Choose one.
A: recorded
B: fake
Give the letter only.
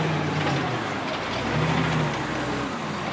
A